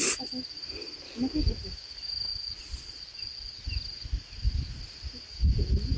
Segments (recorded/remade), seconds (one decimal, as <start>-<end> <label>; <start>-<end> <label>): 0.0-2.3 recorded; 2.3-3.6 remade; 3.6-6.0 recorded